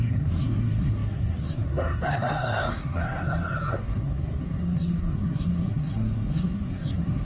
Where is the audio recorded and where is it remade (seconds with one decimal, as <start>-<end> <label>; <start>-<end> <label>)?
0.0-7.2 remade